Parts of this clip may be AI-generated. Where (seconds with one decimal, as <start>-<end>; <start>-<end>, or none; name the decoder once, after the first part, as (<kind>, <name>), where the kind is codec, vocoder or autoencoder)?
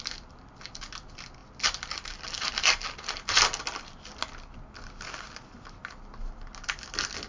none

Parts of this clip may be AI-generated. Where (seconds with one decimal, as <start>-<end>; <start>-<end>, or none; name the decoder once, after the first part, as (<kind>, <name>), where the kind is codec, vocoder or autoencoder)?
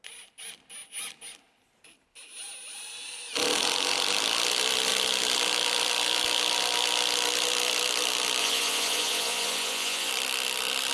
8.4-10.1 (vocoder, Vocos)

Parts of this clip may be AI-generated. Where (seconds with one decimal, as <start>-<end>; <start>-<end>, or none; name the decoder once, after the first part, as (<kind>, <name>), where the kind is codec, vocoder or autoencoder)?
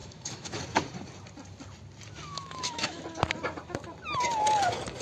0.0-0.6 (autoencoder, DAC-VAE); 2.3-3.0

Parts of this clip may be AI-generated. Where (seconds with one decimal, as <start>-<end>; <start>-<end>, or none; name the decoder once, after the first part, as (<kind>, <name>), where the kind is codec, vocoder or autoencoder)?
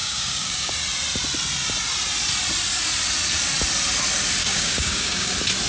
0.0-0.7 (codec, DAC); 4.4-5.3